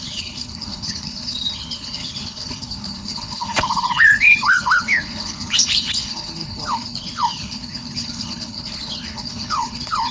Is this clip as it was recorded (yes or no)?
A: no